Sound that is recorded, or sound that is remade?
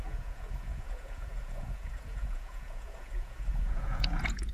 remade